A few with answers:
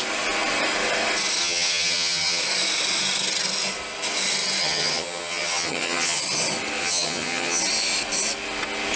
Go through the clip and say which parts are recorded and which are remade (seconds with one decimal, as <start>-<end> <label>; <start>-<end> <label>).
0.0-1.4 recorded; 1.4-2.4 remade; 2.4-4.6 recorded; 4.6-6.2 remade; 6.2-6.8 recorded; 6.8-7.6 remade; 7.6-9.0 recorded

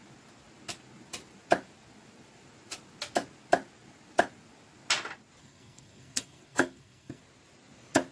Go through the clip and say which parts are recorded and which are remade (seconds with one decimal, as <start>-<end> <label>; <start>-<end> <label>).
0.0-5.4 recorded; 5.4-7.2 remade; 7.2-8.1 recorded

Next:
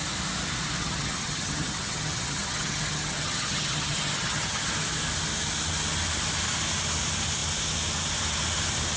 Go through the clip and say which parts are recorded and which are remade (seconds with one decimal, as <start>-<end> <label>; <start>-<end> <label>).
0.0-0.8 recorded; 0.8-4.7 remade; 4.7-9.0 recorded

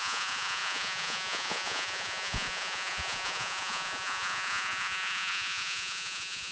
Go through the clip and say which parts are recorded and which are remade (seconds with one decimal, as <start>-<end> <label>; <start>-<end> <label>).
0.0-6.5 remade

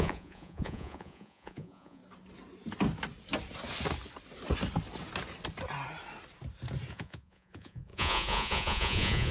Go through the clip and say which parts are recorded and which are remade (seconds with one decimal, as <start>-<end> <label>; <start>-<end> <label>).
0.0-2.0 remade; 2.0-6.9 recorded; 6.9-9.3 remade